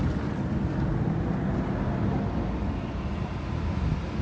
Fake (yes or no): no